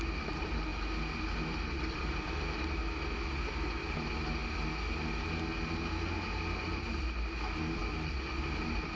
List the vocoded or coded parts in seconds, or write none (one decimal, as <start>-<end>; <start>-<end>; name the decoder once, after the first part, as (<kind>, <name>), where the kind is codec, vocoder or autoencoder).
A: none